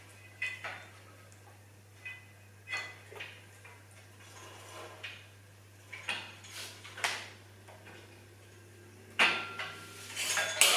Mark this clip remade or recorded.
recorded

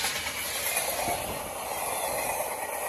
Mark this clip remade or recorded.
recorded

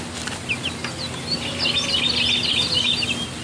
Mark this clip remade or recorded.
recorded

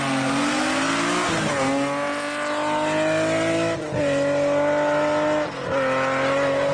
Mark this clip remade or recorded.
recorded